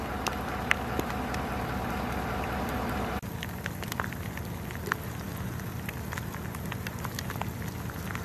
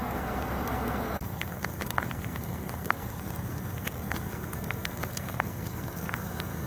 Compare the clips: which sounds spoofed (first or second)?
second